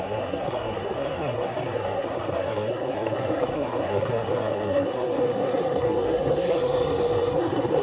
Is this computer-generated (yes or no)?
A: yes